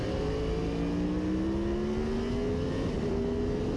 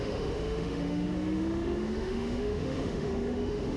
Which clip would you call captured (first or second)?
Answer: first